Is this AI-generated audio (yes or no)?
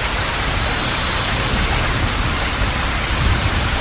yes